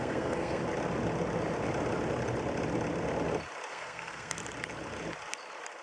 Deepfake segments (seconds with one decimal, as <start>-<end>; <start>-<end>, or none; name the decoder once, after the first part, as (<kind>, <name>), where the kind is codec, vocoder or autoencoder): 0.0-0.6 (codec, SNAC); 3.7-4.4